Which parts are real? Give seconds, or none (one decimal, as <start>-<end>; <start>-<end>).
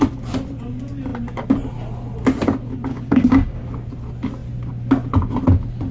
0.0-2.9; 3.6-5.9